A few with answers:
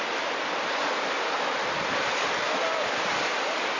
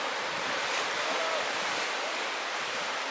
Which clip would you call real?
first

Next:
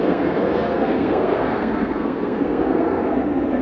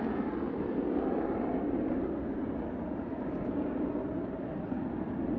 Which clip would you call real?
second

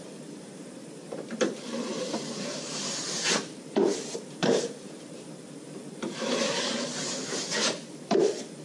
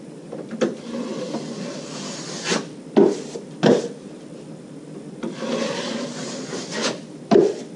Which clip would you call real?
second